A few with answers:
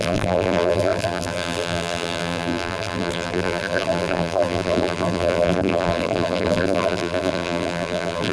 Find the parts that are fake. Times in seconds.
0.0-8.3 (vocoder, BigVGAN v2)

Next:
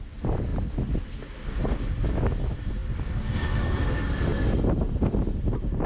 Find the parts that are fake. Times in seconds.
0.5-2.1 (vocoder, BigVGAN v2); 2.8-3.8

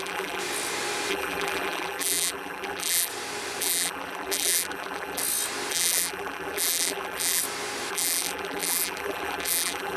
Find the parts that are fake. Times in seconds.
0.0-0.4 (vocoder, BigVGAN v2); 1.1-3.1; 3.6-5.2; 5.7-7.4; 7.9-10.0